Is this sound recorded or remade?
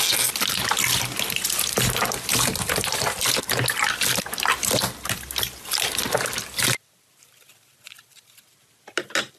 recorded